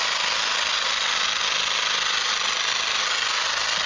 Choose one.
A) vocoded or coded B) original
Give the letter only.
B